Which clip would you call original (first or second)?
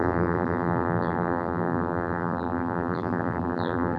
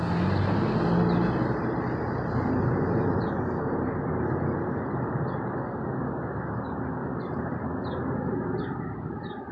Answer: second